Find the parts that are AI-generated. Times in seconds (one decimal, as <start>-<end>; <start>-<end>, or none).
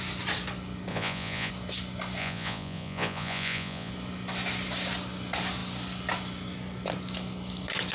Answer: 0.9-1.5; 2.2-3.9